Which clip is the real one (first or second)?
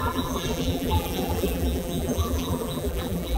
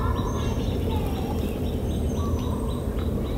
second